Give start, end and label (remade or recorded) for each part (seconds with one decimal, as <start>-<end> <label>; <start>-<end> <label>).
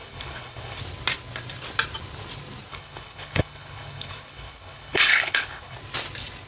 0.0-0.8 remade; 0.8-2.7 recorded; 2.7-5.8 remade; 5.8-6.5 recorded